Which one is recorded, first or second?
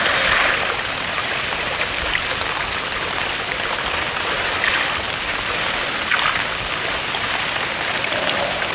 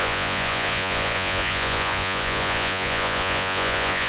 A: first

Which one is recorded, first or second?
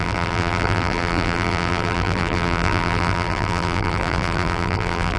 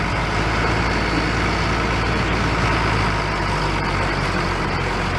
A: second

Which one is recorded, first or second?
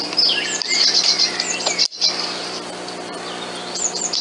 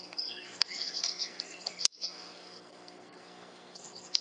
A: first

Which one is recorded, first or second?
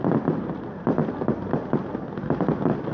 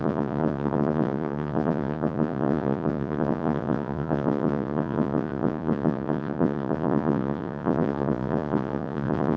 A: first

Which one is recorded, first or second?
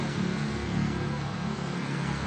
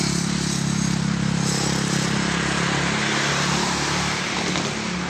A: second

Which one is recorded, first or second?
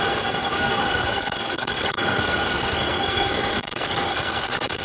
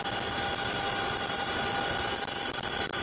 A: second